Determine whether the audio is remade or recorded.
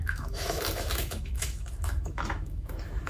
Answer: remade